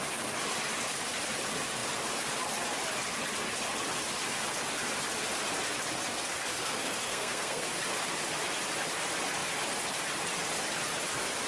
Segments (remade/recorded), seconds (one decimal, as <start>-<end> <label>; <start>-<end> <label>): 0.0-6.5 recorded; 6.5-7.7 remade; 7.7-11.5 recorded